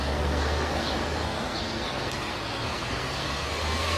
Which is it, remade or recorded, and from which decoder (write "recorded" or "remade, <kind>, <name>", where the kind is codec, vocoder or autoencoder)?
remade, codec, SNAC